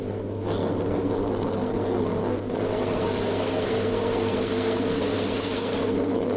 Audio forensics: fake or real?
fake